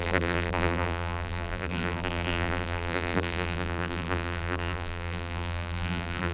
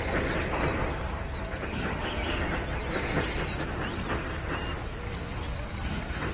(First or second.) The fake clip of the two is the first